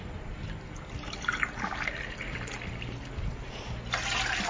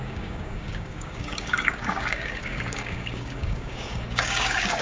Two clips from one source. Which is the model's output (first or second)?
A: second